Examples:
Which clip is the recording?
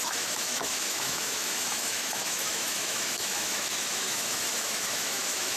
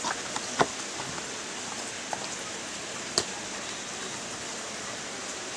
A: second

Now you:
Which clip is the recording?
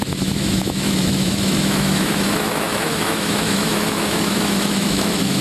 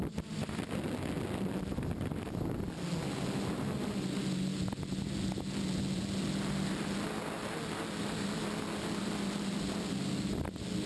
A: second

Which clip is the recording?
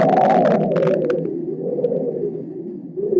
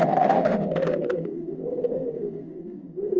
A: first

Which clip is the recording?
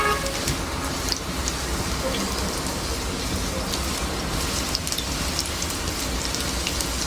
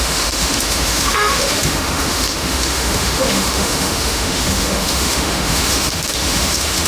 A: first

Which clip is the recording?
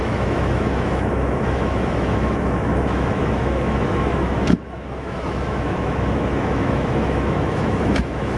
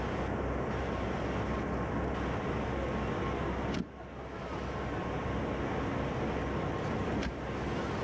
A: second